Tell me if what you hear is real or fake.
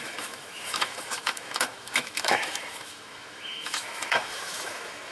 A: fake